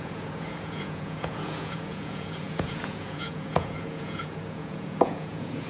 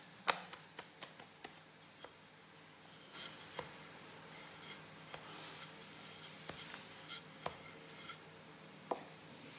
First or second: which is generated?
first